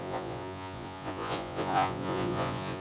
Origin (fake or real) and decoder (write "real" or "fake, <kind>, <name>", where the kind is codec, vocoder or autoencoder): fake, vocoder, Vocos